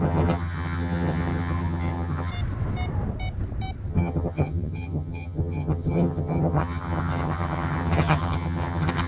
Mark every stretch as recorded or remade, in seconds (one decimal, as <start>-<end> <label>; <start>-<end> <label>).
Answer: 0.0-2.3 remade; 2.3-3.9 recorded; 3.9-9.1 remade